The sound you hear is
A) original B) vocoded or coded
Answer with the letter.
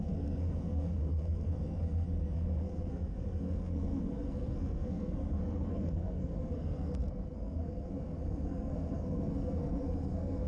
B